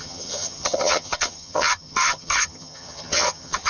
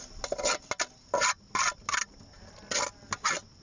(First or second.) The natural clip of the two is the second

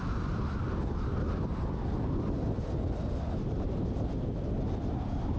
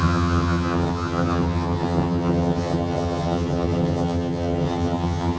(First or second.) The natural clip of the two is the first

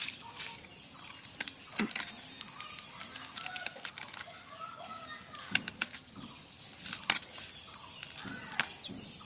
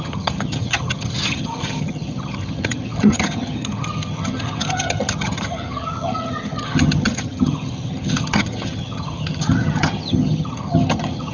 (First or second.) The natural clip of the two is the first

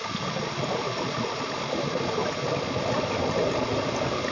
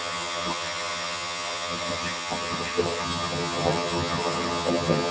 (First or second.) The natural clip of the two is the first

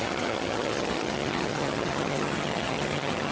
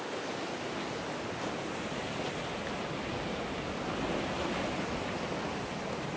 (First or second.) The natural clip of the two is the second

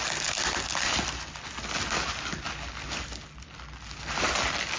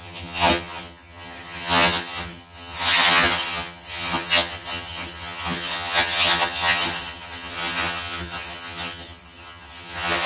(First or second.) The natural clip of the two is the first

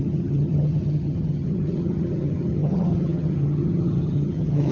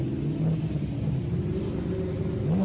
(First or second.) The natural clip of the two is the second